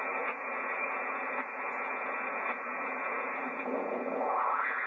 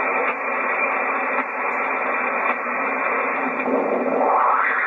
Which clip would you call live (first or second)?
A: second